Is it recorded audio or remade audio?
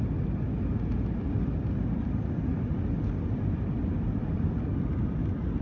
recorded